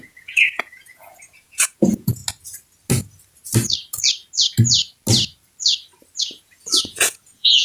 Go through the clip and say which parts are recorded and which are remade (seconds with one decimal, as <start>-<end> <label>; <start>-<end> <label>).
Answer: 0.0-2.2 remade; 2.2-6.2 recorded; 6.2-7.6 remade